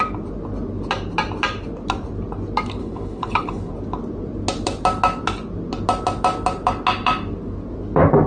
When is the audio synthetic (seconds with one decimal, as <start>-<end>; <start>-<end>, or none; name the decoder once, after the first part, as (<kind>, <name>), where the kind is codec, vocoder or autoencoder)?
2.8-3.7 (codec, HILCodec)